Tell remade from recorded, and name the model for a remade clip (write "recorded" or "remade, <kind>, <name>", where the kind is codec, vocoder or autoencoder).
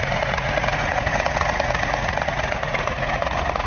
remade, vocoder, Vocos